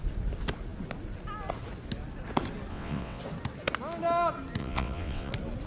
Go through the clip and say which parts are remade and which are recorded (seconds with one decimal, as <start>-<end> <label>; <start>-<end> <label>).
0.0-2.7 recorded; 2.7-3.2 remade; 3.2-4.6 recorded; 4.6-5.3 remade; 5.3-5.7 recorded